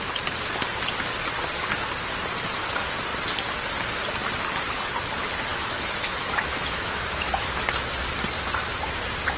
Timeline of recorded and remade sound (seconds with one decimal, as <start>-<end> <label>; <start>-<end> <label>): 0.0-5.5 recorded; 5.5-7.6 remade; 7.6-9.4 recorded